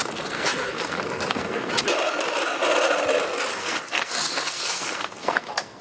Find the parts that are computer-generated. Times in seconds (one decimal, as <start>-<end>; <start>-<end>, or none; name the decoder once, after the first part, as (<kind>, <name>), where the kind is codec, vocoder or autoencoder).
0.0-1.7 (codec, SNAC); 3.5-5.8

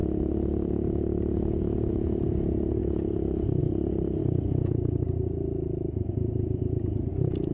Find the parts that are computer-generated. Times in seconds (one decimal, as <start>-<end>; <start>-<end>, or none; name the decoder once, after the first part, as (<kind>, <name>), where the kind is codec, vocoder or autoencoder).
none